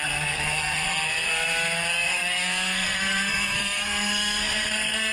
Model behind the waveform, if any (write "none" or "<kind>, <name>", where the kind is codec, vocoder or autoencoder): codec, SNAC